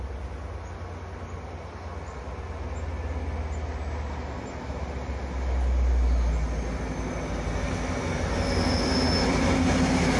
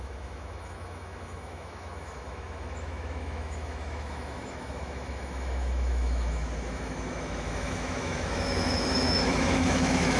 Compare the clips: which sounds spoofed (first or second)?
second